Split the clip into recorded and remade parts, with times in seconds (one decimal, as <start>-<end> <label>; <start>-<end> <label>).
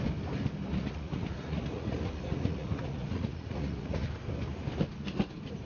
0.0-0.7 recorded; 0.7-4.1 remade; 4.1-5.7 recorded